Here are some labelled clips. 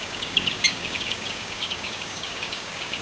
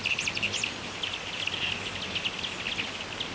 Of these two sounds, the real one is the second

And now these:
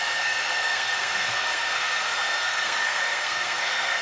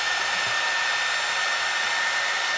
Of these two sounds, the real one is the second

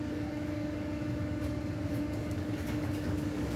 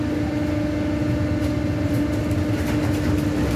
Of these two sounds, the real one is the second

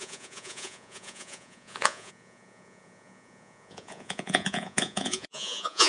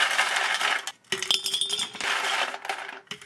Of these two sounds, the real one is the second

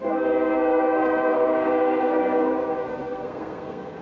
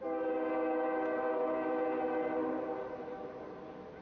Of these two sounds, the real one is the second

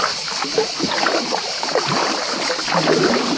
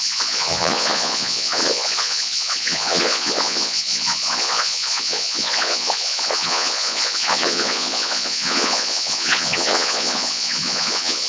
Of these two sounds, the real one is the first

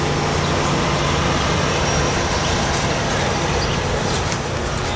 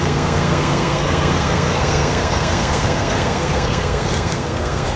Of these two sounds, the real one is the first